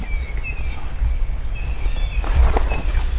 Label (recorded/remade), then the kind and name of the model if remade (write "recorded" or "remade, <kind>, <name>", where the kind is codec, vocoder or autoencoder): recorded